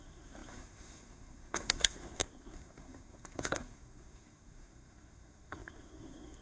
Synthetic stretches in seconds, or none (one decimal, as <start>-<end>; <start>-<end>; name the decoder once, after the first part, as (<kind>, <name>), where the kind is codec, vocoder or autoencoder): 0.0-6.4 (codec, SNAC)